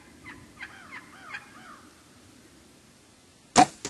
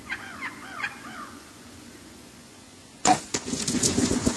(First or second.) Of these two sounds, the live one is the first